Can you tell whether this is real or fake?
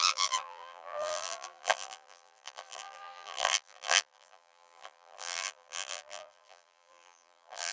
fake